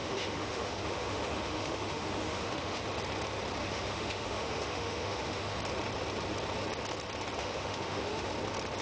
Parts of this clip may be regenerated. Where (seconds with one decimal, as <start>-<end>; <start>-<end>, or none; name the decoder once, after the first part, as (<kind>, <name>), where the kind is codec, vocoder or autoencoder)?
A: 0.0-2.8 (autoencoder, DAC-VAE); 3.6-5.6; 7.4-8.3